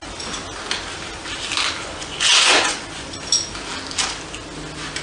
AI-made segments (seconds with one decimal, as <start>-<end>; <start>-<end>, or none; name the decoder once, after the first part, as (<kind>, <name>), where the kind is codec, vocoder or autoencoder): 1.8-3.1 (vocoder, Vocos)